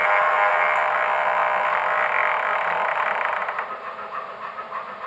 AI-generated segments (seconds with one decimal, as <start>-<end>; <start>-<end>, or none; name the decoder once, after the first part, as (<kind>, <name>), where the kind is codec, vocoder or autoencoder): none